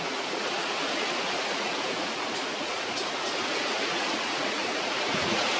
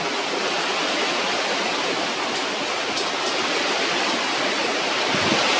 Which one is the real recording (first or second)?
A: second